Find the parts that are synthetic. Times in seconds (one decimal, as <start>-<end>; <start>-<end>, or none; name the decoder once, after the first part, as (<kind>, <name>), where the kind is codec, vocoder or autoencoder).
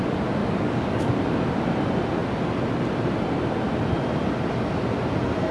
0.4-1.1 (codec, DAC)